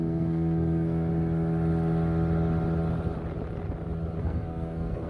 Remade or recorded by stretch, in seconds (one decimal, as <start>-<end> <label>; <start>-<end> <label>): 0.0-1.1 remade; 1.1-4.2 recorded; 4.2-5.1 remade

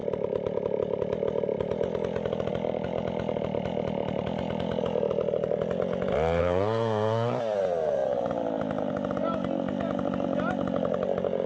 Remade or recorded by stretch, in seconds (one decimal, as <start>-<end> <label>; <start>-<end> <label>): 0.0-6.4 recorded; 6.4-7.4 remade; 7.4-11.5 recorded

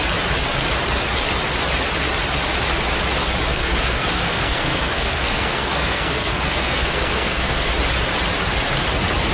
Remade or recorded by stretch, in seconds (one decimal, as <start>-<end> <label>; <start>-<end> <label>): 0.0-3.5 recorded; 3.5-7.7 remade; 7.7-9.3 recorded